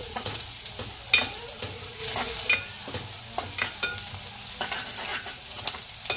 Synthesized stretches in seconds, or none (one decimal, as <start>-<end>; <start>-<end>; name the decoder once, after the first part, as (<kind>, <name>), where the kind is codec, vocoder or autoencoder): 0.0-0.7 (vocoder, Vocos); 5.1-5.8